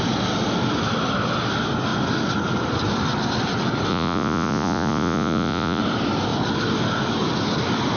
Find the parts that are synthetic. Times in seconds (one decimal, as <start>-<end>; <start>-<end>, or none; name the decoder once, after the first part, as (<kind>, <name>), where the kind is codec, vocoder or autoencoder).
3.9-5.8 (vocoder, Vocos)